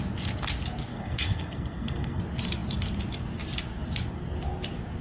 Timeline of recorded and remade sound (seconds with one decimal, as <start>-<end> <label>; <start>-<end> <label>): 0.0-0.9 recorded; 0.9-2.2 remade; 2.2-5.0 recorded